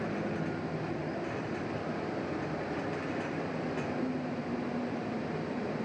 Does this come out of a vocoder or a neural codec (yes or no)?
yes